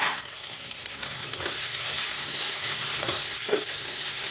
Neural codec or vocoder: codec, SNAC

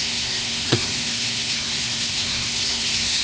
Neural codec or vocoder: codec, SNAC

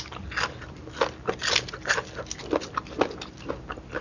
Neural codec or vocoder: none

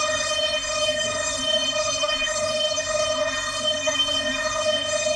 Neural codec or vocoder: codec, SNAC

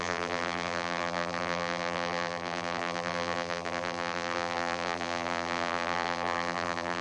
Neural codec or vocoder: vocoder, BigVGAN v2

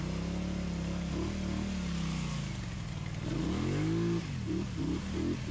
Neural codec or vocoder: none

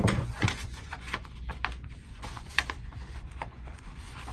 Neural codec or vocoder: vocoder, Vocos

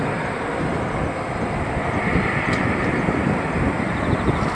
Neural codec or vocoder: none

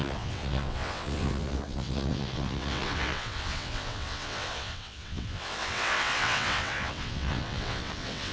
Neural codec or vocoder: vocoder, WaveNeXt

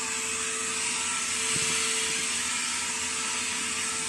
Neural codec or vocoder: none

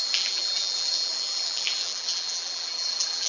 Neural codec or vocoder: vocoder, BigVGAN v2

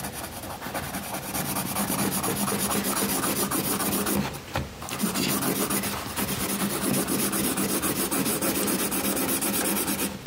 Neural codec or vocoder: none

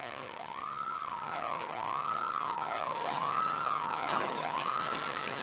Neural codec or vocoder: vocoder, HiFi-GAN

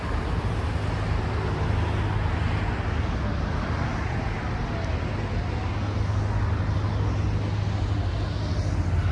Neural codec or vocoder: none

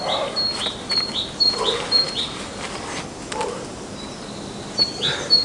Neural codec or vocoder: none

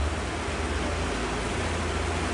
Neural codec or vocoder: none